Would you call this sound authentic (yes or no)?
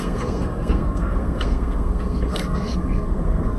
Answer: no